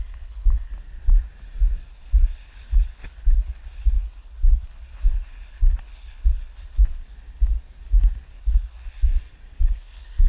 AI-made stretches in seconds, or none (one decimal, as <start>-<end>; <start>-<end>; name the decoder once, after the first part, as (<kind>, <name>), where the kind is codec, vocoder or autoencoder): 0.0-0.7 (codec, HILCodec); 1.9-7.0; 8.4-9.1; 9.6-10.3